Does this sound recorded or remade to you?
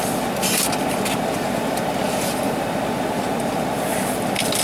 recorded